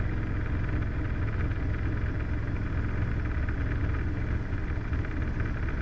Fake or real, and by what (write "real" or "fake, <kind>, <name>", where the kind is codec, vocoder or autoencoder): real